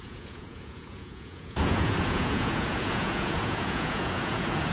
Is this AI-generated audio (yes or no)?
yes